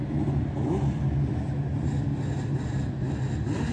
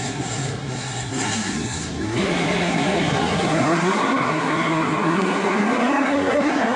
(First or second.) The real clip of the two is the first